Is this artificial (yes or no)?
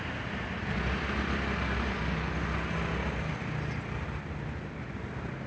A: no